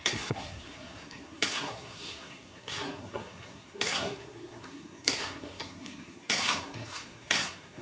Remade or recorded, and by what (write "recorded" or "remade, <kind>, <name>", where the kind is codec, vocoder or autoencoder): remade, codec, SNAC